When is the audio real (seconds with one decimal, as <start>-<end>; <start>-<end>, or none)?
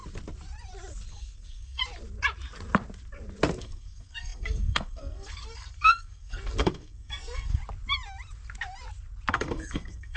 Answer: 0.0-1.1; 1.8-3.6; 7.6-9.3